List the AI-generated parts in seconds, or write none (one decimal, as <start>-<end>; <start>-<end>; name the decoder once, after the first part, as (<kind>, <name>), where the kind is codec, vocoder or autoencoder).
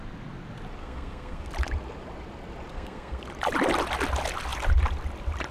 0.8-1.5 (codec, SNAC); 2.7-3.2